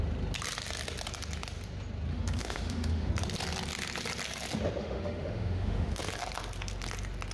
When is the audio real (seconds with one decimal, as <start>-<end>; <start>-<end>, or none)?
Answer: 0.0-2.1; 3.1-4.8; 6.0-7.3